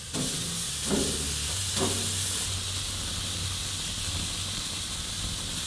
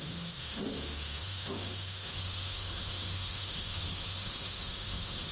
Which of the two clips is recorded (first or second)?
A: first